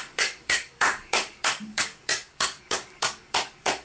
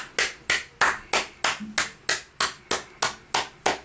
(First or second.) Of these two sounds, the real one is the second